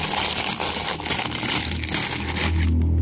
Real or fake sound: real